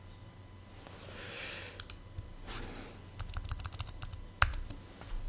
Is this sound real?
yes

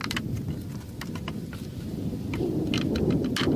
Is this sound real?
yes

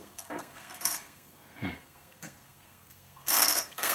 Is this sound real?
no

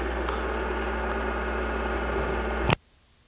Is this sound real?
yes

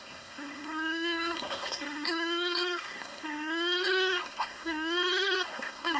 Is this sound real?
no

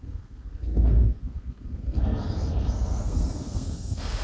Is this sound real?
no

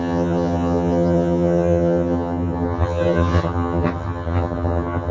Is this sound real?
no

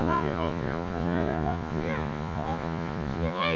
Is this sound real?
no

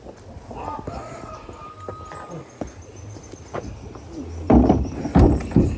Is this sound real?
yes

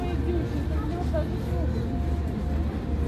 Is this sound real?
yes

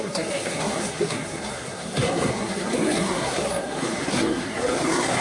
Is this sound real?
no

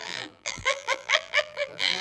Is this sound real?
no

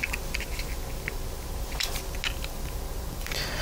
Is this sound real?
yes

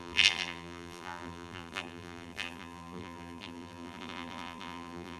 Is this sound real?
no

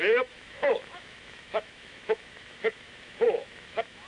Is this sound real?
no